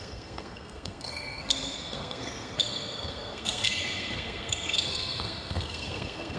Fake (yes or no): yes